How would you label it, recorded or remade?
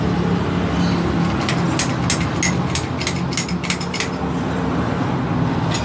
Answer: recorded